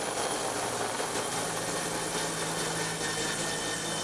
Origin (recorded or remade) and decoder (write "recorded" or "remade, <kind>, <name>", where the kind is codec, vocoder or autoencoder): recorded